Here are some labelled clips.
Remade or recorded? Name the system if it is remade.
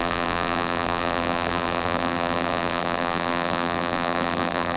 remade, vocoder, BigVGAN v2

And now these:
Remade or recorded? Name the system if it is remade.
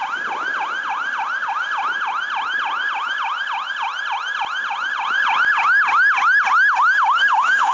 recorded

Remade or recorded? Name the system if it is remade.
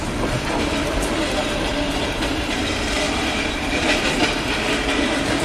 remade, vocoder, BigVGAN v2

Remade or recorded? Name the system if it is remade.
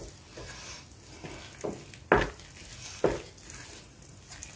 recorded